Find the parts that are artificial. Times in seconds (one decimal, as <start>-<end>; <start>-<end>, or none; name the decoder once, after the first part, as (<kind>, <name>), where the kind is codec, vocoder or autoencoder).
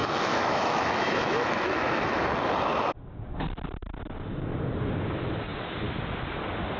0.0-2.2 (autoencoder, DAC-VAE)